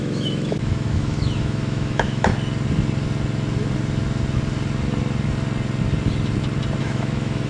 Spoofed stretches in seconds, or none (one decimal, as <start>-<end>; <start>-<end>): 0.0-2.3; 6.8-7.5